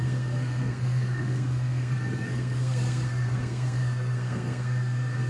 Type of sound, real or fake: fake